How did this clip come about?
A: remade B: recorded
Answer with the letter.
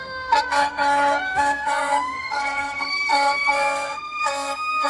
A